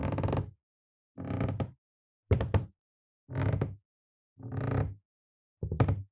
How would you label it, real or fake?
real